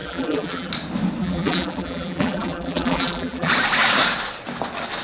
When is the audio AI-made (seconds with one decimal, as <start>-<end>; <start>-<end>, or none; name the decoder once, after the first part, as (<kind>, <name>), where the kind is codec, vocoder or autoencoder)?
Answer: 0.0-0.7 (vocoder, BigVGAN v2); 1.2-3.5